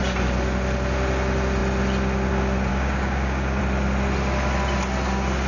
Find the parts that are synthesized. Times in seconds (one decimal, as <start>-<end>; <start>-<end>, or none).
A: 2.7-3.6